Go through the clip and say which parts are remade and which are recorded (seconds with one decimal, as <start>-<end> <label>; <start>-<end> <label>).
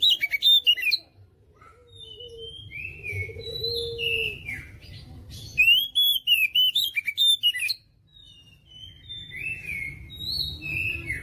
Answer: 0.0-11.2 recorded